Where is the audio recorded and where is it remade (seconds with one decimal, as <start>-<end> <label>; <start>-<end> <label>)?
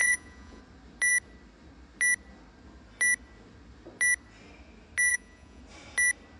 0.0-0.6 remade; 0.6-5.1 recorded; 5.1-5.6 remade; 5.6-6.4 recorded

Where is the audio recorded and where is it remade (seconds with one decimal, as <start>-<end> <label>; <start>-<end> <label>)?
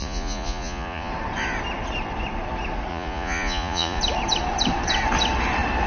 0.0-1.1 remade; 1.1-2.9 recorded; 2.9-4.0 remade; 4.0-5.9 recorded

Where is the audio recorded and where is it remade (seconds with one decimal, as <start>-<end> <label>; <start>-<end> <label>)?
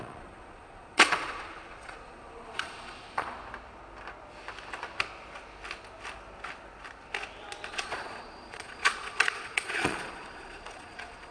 0.0-3.4 remade; 3.4-7.7 recorded; 7.7-11.3 remade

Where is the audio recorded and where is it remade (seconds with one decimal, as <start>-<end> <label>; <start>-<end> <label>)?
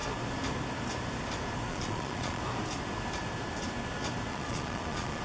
0.0-1.7 recorded; 1.7-2.4 remade; 2.4-4.3 recorded; 4.3-5.2 remade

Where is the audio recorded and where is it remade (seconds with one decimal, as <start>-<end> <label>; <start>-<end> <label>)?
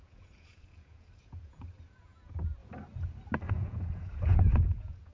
0.0-2.6 remade; 2.6-3.5 recorded; 3.5-5.1 remade